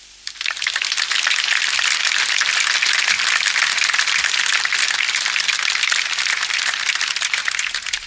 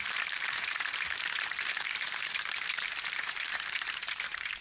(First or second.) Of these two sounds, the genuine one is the first